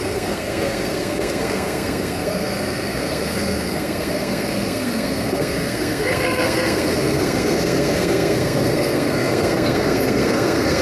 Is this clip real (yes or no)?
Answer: no